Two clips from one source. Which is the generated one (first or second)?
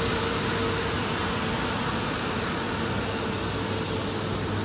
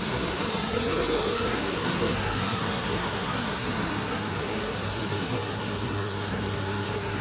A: second